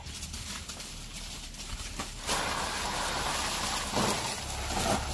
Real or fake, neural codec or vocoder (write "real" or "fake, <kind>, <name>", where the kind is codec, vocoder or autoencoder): real